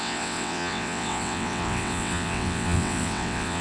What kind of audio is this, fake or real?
fake